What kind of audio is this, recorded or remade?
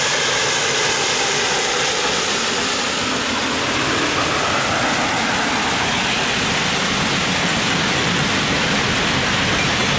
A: recorded